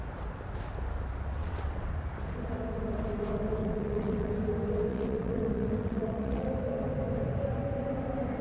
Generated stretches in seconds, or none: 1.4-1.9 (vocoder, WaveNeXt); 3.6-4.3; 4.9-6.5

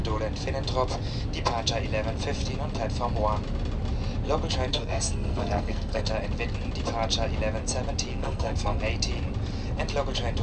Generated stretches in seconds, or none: 4.7-6.1 (codec, SNAC); 8.1-8.8